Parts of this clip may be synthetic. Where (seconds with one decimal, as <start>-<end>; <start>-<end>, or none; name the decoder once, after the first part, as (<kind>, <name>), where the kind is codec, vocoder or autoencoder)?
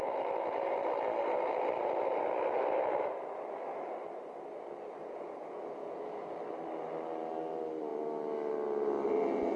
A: 5.0-6.3 (vocoder, Vocos)